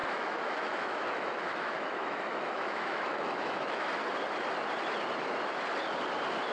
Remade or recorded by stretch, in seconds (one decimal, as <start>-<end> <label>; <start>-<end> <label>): 0.0-3.9 remade; 3.9-6.5 recorded